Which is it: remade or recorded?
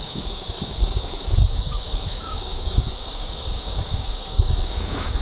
remade